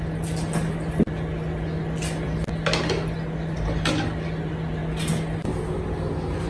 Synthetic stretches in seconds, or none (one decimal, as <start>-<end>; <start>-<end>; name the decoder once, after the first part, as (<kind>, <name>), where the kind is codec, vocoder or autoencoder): none